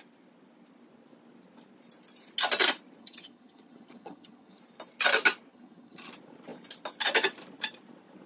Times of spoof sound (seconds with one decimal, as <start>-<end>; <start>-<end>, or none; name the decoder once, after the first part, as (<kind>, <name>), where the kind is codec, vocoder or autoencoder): 3.0-4.6 (vocoder, HiFi-GAN); 5.5-6.1

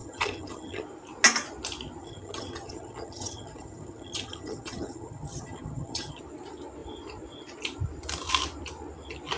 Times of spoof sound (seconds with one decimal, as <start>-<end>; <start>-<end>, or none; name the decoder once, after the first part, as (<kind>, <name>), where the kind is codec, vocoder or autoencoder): 0.0-0.8 (vocoder, HiFi-GAN); 2.0-6.2

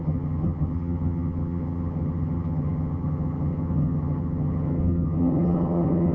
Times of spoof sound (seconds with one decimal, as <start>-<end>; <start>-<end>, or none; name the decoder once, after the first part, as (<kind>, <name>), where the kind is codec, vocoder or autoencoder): 0.0-6.1 (vocoder, HiFi-GAN)

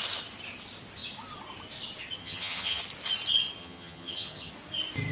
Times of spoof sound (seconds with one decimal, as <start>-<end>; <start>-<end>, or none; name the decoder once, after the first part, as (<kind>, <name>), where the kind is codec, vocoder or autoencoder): 2.2-2.8 (vocoder, HiFi-GAN); 3.6-4.5

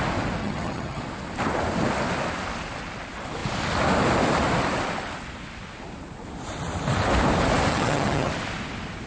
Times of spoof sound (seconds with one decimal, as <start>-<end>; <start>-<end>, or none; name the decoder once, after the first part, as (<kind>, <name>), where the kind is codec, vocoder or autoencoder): 0.4-1.0 (vocoder, HiFi-GAN); 7.7-8.3